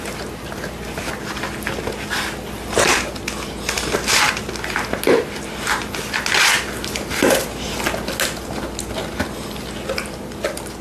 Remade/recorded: recorded